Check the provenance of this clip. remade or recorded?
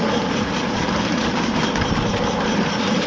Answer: recorded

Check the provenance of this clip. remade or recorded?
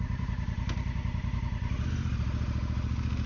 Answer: remade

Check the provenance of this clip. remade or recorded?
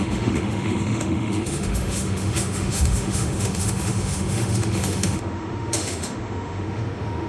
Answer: remade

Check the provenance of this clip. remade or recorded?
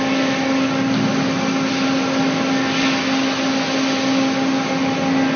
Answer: recorded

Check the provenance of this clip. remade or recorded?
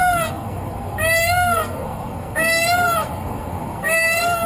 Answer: remade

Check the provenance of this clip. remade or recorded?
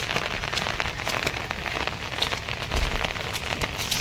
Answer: recorded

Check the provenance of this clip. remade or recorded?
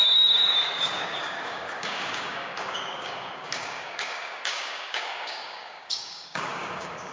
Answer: remade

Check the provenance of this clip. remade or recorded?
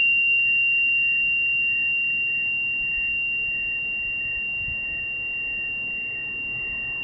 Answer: recorded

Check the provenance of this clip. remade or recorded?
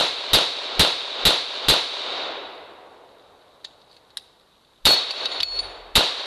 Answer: recorded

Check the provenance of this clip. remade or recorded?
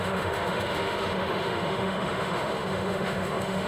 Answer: remade